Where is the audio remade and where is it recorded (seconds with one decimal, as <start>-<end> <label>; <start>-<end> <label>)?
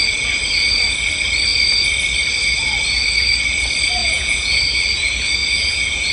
0.0-4.0 recorded; 4.0-4.6 remade; 4.6-5.4 recorded; 5.4-6.1 remade